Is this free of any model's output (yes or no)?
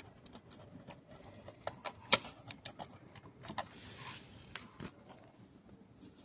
yes